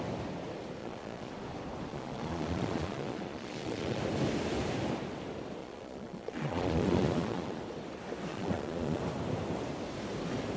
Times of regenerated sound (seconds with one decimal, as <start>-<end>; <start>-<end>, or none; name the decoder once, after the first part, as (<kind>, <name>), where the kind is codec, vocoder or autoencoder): 0.8-1.3 (vocoder, Vocos); 1.9-4.0; 5.6-7.6; 8.3-9.0